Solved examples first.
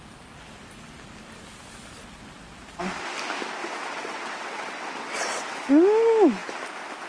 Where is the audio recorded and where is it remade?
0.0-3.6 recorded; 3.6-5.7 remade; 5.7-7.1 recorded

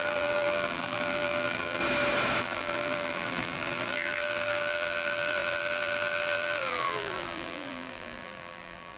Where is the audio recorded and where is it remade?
0.0-1.8 remade; 1.8-2.4 recorded; 2.4-9.0 remade

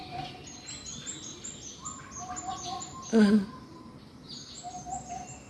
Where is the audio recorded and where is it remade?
0.0-5.5 recorded

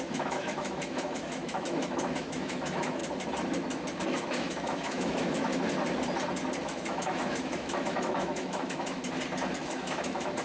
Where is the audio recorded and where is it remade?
0.0-3.0 remade; 3.0-4.0 recorded; 4.0-5.5 remade; 5.5-6.6 recorded; 6.6-9.0 remade; 9.0-9.6 recorded; 9.6-10.4 remade